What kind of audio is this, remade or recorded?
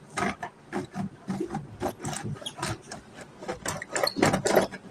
recorded